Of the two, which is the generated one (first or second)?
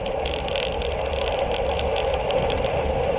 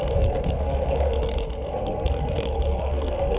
second